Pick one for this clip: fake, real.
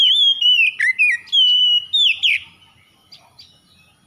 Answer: real